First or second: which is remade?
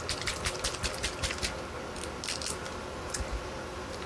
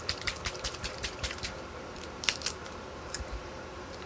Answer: second